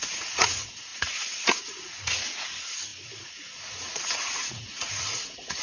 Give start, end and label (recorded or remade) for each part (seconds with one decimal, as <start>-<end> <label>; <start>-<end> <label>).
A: 0.0-5.6 remade